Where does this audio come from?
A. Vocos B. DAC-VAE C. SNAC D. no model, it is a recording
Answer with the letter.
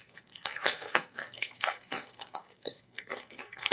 C